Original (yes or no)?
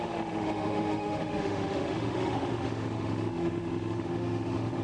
no